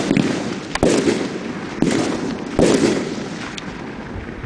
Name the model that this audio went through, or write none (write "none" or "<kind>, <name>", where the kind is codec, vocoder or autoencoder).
none